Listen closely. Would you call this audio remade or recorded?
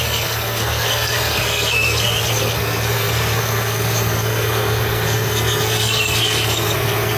remade